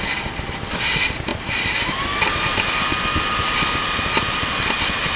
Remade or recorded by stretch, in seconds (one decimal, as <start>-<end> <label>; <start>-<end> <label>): 0.0-5.2 recorded